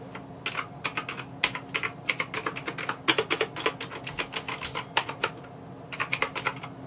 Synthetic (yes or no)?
no